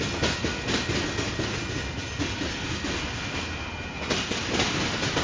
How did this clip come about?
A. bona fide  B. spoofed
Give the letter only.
A